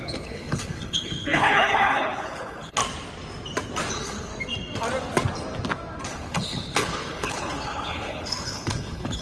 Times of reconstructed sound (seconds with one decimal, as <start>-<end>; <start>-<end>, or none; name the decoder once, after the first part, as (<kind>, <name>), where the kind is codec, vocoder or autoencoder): 0.0-2.8 (codec, HILCodec); 3.9-4.3; 6.1-9.2